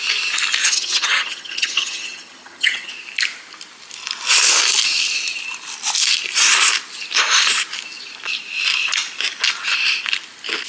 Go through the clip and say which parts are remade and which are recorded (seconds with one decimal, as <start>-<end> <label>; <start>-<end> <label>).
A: 0.0-0.6 recorded; 0.6-2.9 remade; 2.9-10.7 recorded